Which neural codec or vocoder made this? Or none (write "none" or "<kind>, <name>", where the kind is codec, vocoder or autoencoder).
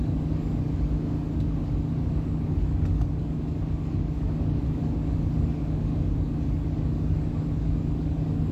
codec, DAC